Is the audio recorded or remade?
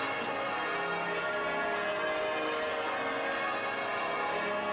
recorded